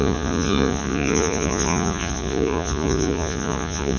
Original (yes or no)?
no